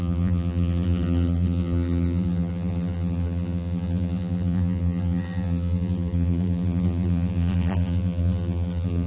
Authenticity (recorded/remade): remade